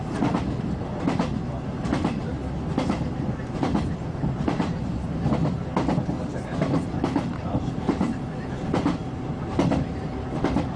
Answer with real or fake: real